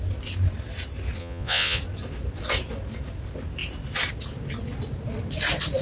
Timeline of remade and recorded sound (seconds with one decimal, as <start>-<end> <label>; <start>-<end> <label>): 0.0-1.2 recorded; 1.2-1.8 remade; 1.8-5.8 recorded